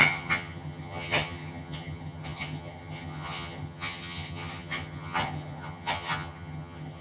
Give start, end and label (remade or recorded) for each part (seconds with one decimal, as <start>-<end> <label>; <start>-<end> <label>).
0.0-7.0 remade